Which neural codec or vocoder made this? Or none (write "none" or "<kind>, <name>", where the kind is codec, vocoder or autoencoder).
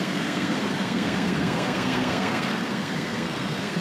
codec, SNAC